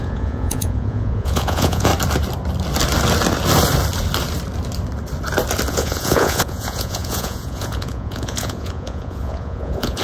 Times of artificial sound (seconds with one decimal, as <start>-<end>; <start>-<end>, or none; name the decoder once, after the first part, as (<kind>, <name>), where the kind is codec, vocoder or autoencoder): 0.0-1.9 (vocoder, Vocos); 5.7-10.0